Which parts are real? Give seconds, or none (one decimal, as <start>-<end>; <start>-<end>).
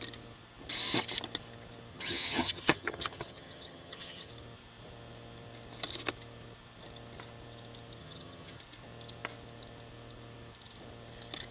0.0-1.9; 4.3-8.0; 8.6-11.5